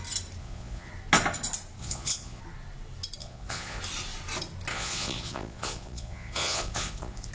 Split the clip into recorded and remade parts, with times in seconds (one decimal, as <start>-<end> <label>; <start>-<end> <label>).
0.0-0.4 recorded; 0.4-0.9 remade; 0.9-1.8 recorded; 1.8-2.4 remade; 2.4-3.2 recorded; 3.2-3.8 remade; 3.8-4.7 recorded; 4.7-7.3 remade